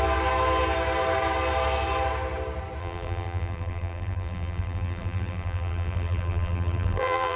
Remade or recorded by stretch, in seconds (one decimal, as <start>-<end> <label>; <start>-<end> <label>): 0.0-2.8 recorded; 2.8-7.4 remade